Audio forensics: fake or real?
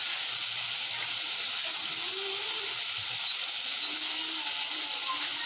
real